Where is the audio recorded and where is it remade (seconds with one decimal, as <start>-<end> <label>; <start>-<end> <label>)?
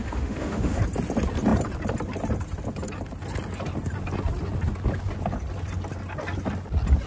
0.0-0.8 remade; 0.8-7.1 recorded